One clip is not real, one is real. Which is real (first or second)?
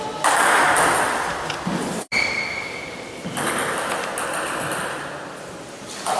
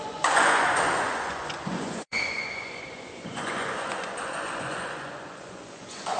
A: first